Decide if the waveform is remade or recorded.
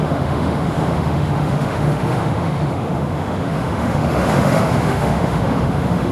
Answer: remade